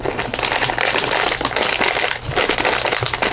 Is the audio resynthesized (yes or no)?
no